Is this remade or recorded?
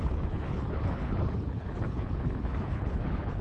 remade